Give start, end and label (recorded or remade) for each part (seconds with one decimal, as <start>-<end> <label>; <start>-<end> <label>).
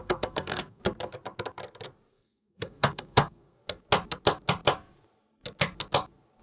0.0-0.8 remade; 0.8-2.1 recorded; 2.1-3.6 remade; 3.6-6.4 recorded